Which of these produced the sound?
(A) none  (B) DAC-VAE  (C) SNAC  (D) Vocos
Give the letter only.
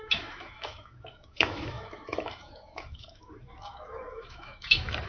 B